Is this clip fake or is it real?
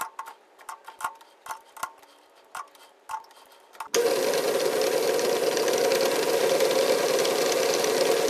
real